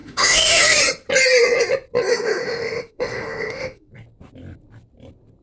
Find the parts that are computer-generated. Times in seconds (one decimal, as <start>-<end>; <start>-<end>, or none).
0.0-0.8; 2.1-3.9